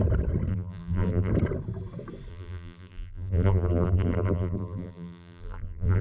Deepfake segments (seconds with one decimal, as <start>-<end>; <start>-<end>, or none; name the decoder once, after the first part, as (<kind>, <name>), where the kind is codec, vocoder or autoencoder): 0.5-1.3 (vocoder, BigVGAN v2); 2.3-6.0